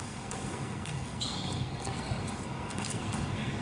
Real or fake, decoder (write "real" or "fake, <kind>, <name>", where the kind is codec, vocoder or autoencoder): fake, codec, SNAC